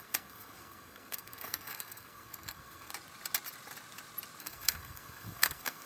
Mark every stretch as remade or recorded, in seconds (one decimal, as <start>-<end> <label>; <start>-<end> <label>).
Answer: 0.0-2.9 remade; 2.9-4.4 recorded; 4.4-5.9 remade